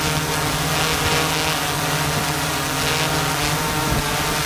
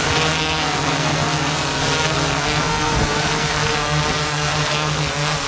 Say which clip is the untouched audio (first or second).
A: first